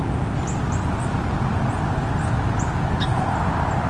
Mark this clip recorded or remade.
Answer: recorded